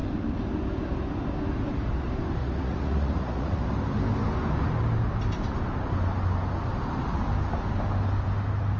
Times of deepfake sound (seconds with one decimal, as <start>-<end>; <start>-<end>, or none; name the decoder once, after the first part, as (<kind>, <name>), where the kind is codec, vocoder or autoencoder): 2.4-3.6 (vocoder, Vocos)